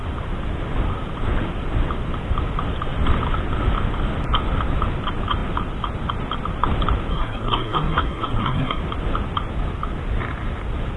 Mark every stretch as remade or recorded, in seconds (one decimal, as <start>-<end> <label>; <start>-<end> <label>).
0.0-7.1 recorded; 7.1-8.8 remade; 8.8-11.0 recorded